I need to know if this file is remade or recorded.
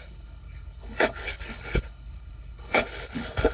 remade